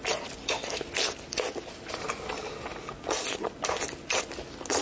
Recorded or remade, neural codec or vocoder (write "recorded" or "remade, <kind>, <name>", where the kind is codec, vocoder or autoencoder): recorded